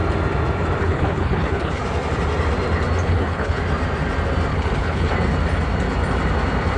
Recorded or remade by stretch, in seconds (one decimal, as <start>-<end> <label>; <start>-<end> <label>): 0.0-0.8 recorded; 0.8-1.8 remade; 1.8-3.0 recorded; 3.0-3.6 remade; 3.6-4.5 recorded; 4.5-5.1 remade; 5.1-6.8 recorded